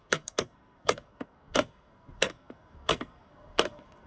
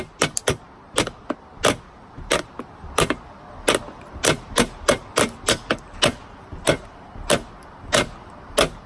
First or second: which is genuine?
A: second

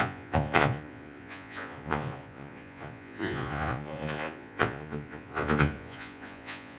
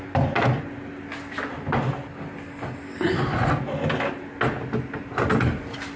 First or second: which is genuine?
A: second